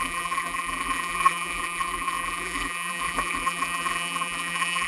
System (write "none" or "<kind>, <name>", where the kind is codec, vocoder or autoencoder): vocoder, BigVGAN v2